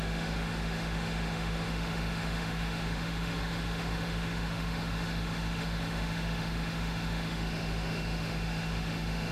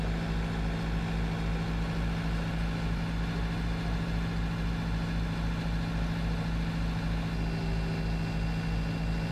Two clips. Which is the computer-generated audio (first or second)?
first